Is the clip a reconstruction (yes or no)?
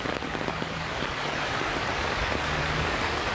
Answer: yes